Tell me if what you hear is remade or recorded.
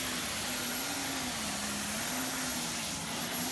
recorded